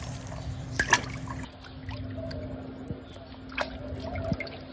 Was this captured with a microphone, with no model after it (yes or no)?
yes